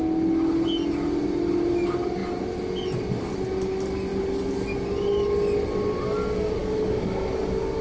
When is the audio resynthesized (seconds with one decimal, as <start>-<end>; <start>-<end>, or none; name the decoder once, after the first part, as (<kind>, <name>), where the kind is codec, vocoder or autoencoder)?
6.6-7.8 (codec, DAC)